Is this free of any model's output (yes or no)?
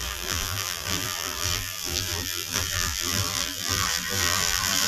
no